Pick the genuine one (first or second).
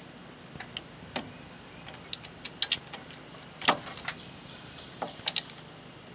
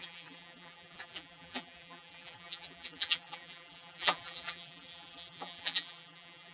first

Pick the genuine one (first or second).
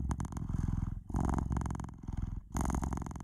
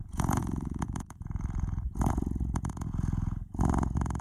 first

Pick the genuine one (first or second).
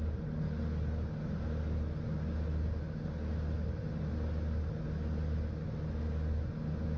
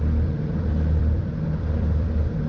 first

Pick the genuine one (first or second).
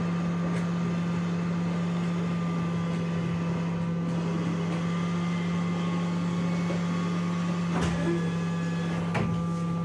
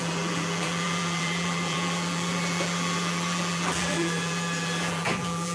first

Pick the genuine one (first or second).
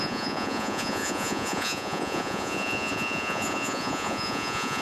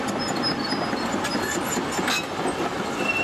second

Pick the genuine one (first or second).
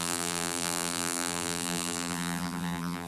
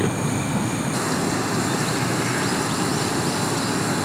second